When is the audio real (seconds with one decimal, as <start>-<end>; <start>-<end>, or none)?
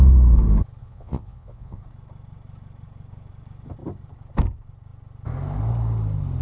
0.0-0.8; 1.8-6.4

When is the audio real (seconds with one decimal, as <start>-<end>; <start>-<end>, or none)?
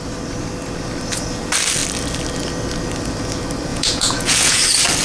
0.0-3.7; 4.6-5.0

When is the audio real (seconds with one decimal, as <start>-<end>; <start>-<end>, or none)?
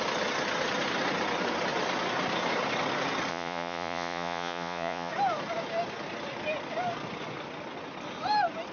0.0-3.3; 5.1-8.7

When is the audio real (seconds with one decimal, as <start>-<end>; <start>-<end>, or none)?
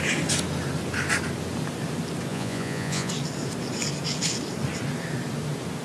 0.0-2.3; 3.1-5.8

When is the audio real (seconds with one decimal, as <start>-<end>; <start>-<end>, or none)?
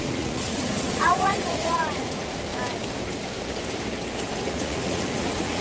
2.5-4.4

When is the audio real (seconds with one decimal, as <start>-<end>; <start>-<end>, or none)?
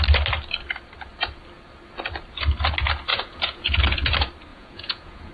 0.0-3.1; 3.8-4.5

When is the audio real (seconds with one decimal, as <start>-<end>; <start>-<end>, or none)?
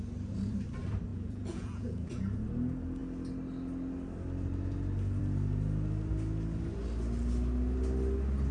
0.0-1.1; 2.1-8.5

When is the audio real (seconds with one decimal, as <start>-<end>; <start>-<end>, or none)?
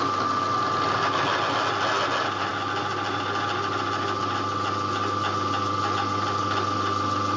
0.0-7.4